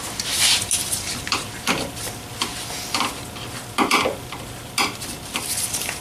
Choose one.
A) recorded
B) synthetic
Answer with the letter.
A